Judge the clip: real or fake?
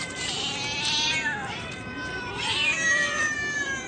fake